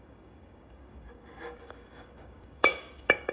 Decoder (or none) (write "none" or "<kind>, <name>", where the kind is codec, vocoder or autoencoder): codec, DAC